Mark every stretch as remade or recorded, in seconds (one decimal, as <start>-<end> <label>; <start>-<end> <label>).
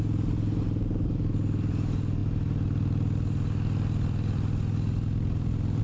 0.0-5.8 recorded